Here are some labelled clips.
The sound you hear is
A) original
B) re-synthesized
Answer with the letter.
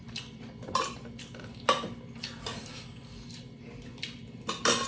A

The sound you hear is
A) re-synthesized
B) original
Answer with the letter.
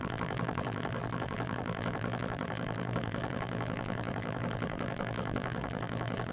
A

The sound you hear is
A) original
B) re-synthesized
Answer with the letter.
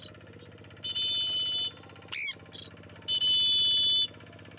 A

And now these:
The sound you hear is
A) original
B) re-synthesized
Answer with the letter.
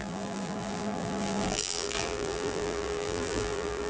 B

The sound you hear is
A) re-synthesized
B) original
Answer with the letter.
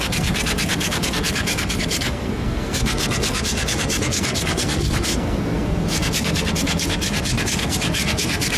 A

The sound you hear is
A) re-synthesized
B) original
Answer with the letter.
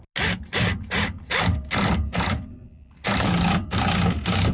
B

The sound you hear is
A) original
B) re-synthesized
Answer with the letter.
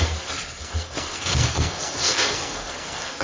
B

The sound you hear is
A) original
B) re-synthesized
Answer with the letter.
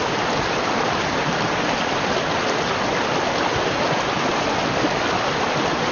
A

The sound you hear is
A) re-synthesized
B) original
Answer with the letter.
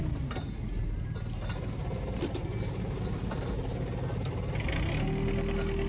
B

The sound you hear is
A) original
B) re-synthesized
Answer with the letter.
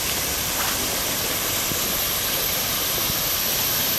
B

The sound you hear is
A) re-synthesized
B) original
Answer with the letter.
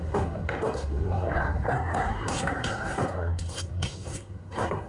A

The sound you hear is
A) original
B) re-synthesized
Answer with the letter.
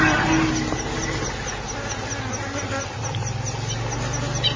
A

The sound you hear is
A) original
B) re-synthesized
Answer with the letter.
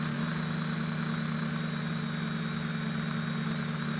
A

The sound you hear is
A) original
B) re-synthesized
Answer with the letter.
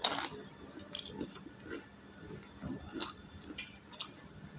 A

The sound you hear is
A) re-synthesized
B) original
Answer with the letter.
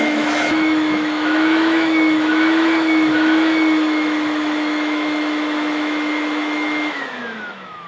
A